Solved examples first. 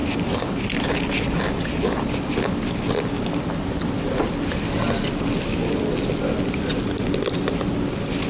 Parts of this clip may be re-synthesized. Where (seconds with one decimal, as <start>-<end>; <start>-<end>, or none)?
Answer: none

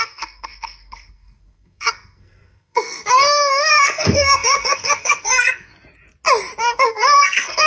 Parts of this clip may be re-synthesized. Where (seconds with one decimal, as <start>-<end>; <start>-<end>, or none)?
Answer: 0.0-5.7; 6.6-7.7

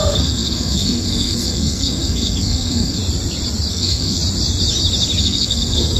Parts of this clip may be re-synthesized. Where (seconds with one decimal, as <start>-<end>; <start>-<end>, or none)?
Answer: 0.0-3.0; 3.7-4.2; 5.2-6.0